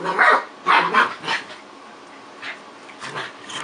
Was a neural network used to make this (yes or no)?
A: no